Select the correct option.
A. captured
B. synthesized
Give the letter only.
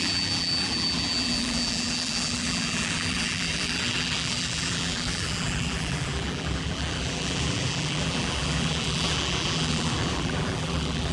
B